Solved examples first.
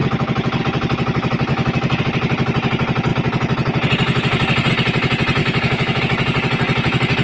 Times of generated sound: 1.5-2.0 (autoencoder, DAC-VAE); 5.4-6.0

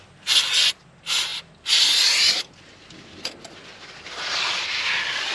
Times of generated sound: none